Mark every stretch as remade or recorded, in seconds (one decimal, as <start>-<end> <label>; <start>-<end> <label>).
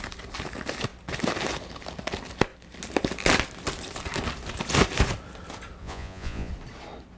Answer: 0.0-5.8 recorded; 5.8-6.5 remade; 6.5-7.2 recorded